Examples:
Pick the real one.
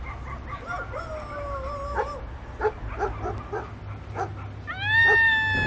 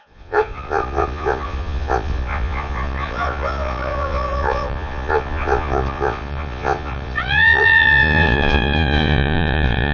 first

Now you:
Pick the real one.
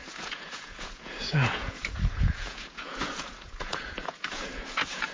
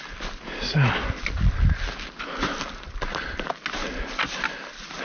second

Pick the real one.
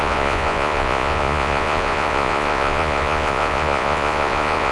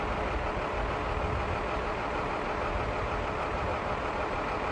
second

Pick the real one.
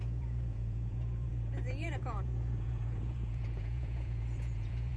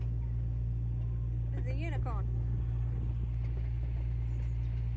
second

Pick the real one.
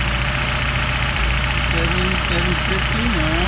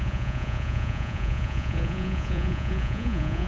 first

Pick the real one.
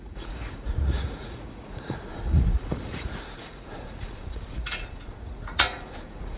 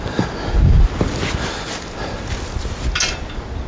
second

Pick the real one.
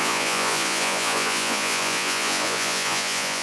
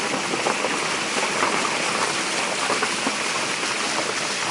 second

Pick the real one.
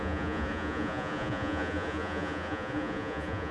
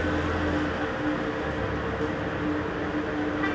second